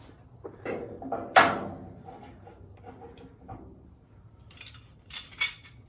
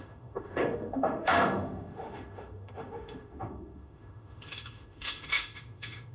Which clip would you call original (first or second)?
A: first